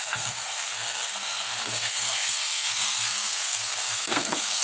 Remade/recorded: remade